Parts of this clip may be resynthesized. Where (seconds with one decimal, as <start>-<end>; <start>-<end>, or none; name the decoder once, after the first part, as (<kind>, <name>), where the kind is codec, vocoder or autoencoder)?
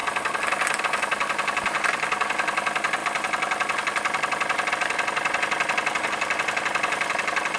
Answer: none